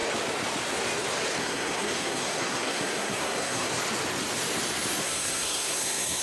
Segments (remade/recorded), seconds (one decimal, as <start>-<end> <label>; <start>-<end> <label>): 0.0-1.4 recorded; 1.4-3.7 remade; 3.7-5.0 recorded; 5.0-6.2 remade